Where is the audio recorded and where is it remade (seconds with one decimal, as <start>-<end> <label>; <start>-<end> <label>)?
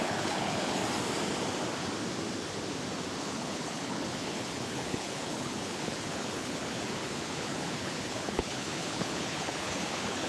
0.0-0.8 remade; 0.8-3.2 recorded; 3.2-10.3 remade